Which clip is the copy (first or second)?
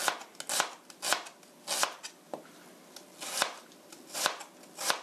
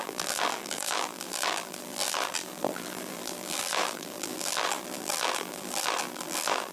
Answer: second